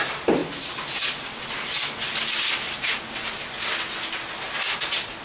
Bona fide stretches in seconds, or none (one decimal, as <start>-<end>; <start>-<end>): 0.0-5.2